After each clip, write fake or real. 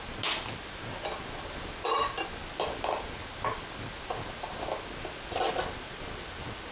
real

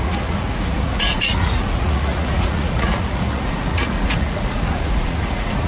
fake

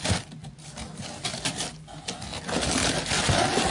real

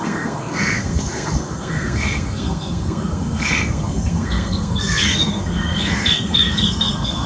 fake